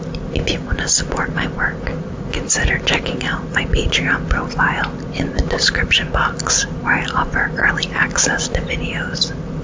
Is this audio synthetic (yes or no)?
no